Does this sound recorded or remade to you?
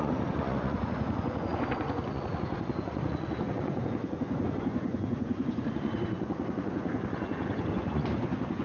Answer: remade